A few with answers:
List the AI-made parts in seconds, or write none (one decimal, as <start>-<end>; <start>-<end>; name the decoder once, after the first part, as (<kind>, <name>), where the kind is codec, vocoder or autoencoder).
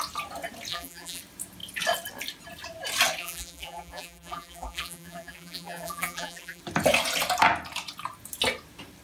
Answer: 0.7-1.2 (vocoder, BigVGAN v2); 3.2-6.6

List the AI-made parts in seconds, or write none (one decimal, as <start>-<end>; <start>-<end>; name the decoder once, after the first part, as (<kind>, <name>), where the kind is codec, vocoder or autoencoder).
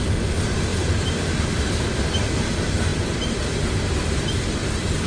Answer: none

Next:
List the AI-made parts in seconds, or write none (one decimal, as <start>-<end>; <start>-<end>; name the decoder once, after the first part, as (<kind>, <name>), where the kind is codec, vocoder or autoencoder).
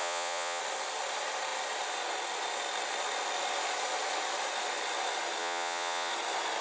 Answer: 0.0-0.6 (vocoder, Vocos); 5.4-6.1